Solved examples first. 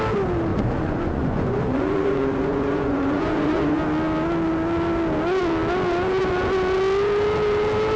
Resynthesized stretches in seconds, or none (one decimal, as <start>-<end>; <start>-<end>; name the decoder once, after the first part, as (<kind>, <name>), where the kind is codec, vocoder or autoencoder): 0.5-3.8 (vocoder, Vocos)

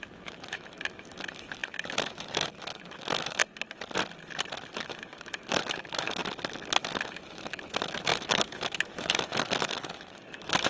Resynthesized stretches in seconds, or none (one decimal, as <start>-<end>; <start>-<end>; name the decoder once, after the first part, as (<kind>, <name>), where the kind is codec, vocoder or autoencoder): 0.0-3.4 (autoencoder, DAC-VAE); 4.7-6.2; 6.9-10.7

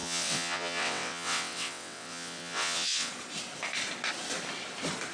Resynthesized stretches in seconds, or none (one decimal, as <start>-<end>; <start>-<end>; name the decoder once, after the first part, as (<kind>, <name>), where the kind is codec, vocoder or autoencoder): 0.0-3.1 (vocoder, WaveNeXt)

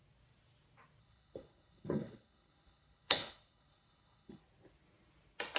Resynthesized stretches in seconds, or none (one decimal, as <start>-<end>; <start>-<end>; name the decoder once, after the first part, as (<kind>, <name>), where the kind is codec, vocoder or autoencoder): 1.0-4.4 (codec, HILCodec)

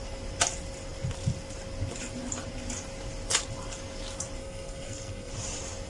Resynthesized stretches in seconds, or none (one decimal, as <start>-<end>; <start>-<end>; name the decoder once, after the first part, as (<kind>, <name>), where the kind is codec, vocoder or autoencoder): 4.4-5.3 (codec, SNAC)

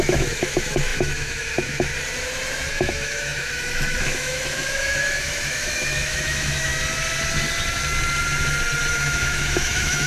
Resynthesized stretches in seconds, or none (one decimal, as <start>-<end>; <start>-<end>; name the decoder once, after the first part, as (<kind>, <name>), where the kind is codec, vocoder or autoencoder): 0.0-1.9 (autoencoder, DAC-VAE); 2.7-6.7; 8.9-10.1